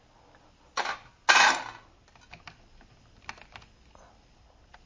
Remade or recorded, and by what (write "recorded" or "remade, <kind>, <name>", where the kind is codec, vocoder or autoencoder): recorded